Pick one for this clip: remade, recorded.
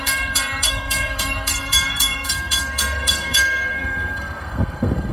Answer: remade